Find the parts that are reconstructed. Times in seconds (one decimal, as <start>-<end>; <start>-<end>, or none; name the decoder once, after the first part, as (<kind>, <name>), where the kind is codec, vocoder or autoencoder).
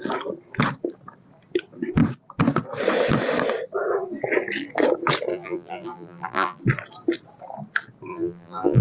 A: 5.3-6.6 (vocoder, BigVGAN v2); 8.1-8.8